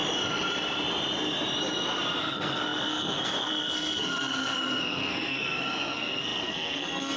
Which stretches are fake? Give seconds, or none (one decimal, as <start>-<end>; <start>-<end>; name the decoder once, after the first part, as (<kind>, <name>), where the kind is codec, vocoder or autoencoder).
2.2-7.2 (codec, SNAC)